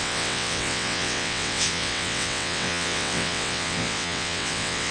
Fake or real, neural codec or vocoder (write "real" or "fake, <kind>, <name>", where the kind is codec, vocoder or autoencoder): fake, vocoder, WaveNeXt